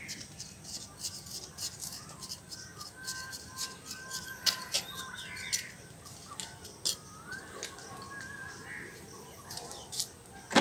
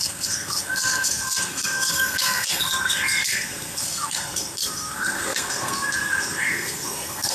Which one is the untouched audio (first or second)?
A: first